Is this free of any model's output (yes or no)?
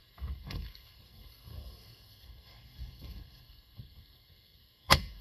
no